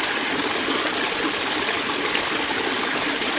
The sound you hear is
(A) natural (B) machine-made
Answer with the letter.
A